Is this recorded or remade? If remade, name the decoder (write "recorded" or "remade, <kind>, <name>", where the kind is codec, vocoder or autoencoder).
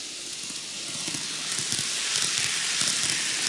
recorded